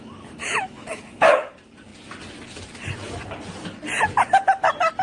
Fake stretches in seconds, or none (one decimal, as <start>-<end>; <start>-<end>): 0.4-1.5